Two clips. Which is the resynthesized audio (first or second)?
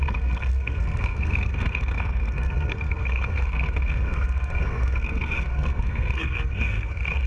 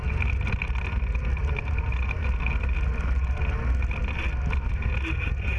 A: first